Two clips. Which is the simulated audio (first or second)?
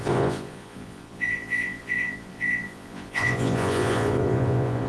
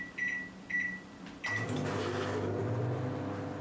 first